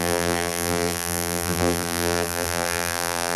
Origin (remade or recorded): remade